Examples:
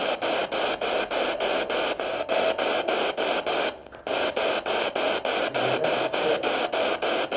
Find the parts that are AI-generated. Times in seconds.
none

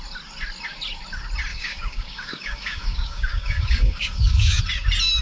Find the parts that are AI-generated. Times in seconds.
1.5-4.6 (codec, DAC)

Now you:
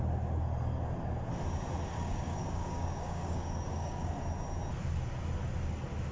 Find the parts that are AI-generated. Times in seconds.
1.9-4.1 (codec, DAC)